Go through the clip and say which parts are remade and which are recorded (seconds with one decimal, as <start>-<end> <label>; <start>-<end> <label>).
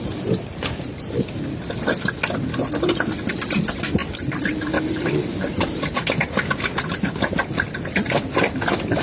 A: 0.0-9.0 recorded